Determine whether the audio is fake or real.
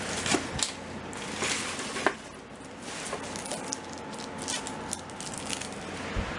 real